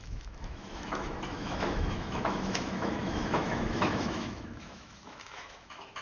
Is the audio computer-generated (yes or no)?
yes